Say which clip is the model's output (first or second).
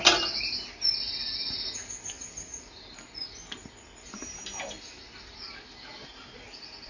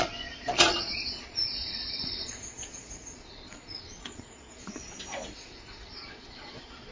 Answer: second